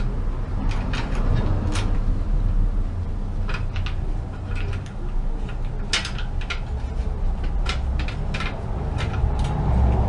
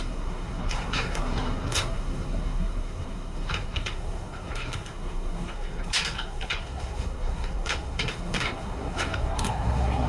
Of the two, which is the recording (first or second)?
first